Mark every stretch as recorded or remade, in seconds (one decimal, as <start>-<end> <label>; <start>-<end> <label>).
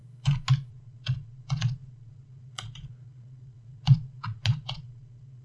0.0-0.7 recorded; 0.7-5.4 remade